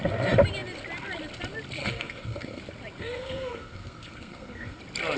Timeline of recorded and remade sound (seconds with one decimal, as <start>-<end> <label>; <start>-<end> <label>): 0.0-1.8 recorded; 1.8-2.6 remade; 2.6-3.0 recorded; 3.0-4.8 remade; 4.8-5.2 recorded